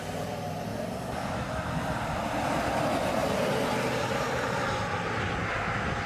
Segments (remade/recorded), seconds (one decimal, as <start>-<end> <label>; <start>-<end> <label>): 0.0-3.2 remade; 3.2-4.1 recorded; 4.1-6.1 remade

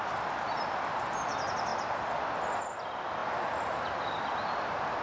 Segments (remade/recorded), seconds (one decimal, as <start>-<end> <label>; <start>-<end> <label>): 0.0-5.0 recorded

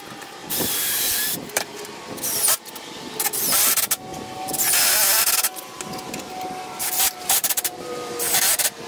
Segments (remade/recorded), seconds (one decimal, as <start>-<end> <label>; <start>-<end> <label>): 0.0-0.4 recorded; 0.4-1.9 remade; 1.9-4.1 recorded; 4.1-4.8 remade; 4.8-6.8 recorded; 6.8-7.5 remade; 7.5-8.9 recorded

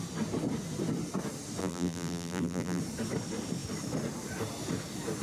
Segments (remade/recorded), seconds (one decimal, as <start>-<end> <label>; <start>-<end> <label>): 0.0-1.6 recorded; 1.6-2.8 remade; 2.8-5.2 recorded

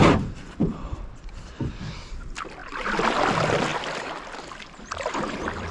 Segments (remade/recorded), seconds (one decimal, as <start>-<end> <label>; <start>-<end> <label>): 0.0-3.7 remade; 3.7-4.7 recorded; 4.7-5.7 remade

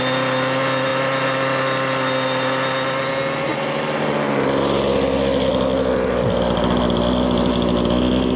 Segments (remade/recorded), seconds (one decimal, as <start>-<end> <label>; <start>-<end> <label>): 0.0-8.4 recorded

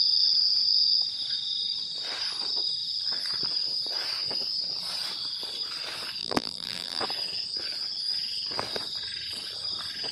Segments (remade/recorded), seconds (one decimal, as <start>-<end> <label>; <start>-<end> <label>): 0.0-6.2 recorded; 6.2-7.0 remade; 7.0-10.1 recorded

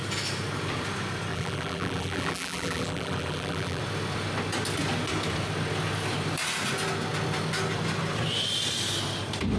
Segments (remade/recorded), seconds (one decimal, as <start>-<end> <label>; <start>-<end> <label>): 0.0-1.3 recorded; 1.3-3.8 remade; 3.8-9.6 recorded